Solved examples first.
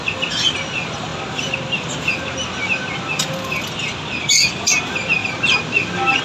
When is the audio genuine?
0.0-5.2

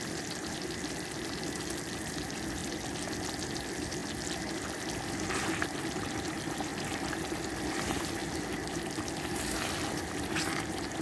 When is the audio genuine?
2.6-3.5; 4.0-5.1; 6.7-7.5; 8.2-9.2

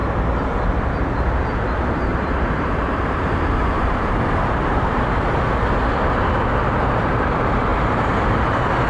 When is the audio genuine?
0.0-2.1; 5.8-7.7; 8.4-8.9

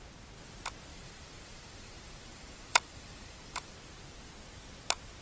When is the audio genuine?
0.0-0.9; 3.7-5.2